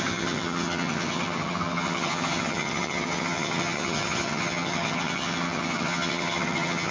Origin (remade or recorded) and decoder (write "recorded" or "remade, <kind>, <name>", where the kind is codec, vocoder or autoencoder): remade, vocoder, HiFi-GAN